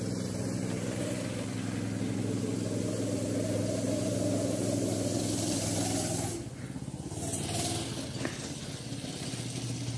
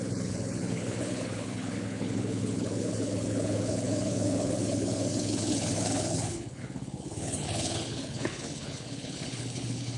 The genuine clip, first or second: first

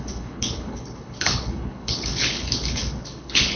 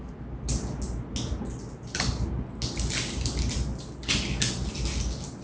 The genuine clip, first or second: second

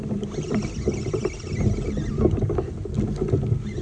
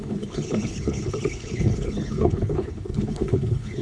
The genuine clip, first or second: first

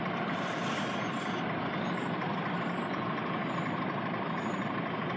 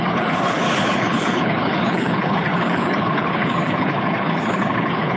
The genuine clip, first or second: first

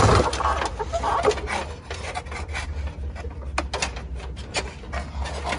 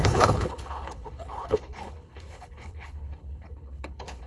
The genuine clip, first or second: first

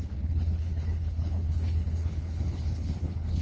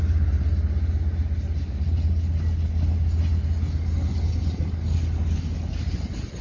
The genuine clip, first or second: second